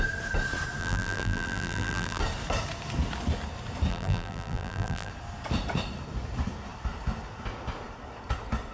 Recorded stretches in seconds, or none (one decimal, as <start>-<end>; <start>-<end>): 0.0-0.8; 2.2-3.9; 5.1-8.7